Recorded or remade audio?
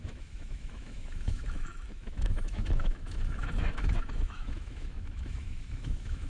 remade